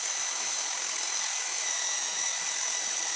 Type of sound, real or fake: fake